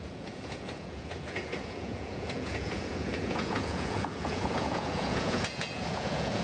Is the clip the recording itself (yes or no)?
no